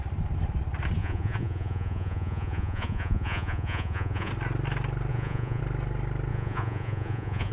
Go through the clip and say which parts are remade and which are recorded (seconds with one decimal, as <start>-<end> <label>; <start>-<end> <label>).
0.0-1.0 recorded; 1.0-4.3 remade; 4.3-5.1 recorded; 5.1-5.6 remade; 5.6-6.3 recorded; 6.3-7.5 remade